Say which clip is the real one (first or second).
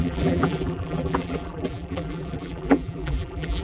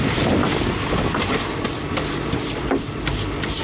second